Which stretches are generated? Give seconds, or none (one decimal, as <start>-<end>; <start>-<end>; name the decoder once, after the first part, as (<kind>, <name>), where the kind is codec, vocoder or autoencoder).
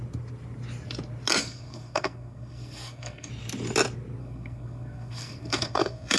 1.4-3.3 (codec, SNAC); 4.2-6.2